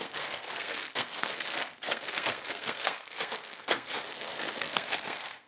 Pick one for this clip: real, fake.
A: fake